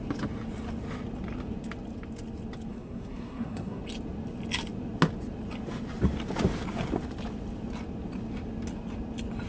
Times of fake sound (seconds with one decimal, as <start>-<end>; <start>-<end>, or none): 2.7-3.8